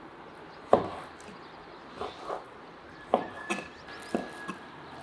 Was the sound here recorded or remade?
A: recorded